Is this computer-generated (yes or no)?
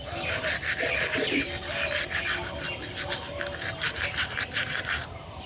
no